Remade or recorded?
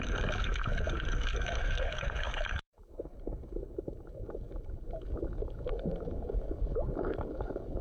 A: remade